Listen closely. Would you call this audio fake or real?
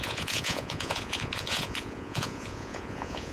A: fake